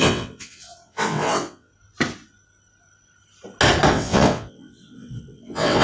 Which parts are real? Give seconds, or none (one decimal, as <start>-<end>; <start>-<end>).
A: 1.7-3.9